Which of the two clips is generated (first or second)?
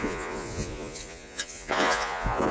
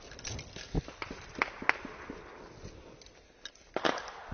first